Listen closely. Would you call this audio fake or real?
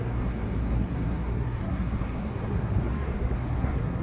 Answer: fake